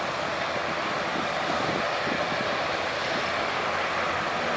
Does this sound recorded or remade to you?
recorded